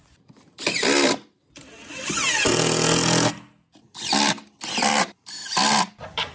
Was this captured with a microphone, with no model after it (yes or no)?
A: yes